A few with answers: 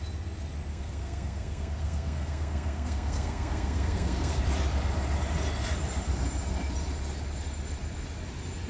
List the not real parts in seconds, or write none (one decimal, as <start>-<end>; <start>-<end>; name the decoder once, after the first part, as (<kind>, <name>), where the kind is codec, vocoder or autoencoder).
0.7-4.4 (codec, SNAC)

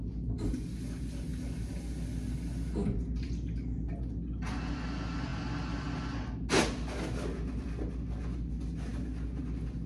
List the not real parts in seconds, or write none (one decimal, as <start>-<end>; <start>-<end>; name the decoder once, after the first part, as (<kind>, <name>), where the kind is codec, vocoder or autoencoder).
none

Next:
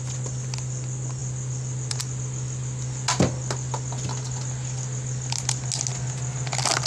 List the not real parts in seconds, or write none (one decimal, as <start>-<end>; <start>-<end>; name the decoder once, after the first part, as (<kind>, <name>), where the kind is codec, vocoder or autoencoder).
none

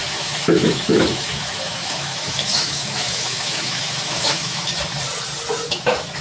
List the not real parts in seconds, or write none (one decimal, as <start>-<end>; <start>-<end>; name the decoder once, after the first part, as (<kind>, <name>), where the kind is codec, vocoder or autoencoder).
0.0-4.7 (autoencoder, DAC-VAE); 5.7-6.2

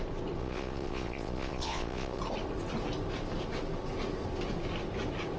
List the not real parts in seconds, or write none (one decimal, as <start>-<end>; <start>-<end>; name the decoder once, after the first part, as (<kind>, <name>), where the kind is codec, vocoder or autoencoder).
0.4-2.2 (vocoder, Vocos)

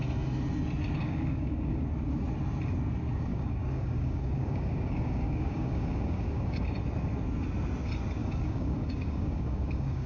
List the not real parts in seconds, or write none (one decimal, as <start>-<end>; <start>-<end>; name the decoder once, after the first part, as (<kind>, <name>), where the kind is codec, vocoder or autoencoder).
1.0-1.8 (codec, DAC); 3.3-6.6; 8.2-10.1

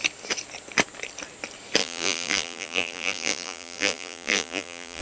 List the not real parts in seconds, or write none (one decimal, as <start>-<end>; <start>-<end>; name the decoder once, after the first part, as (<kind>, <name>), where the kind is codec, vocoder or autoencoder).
1.8-5.0 (vocoder, BigVGAN v2)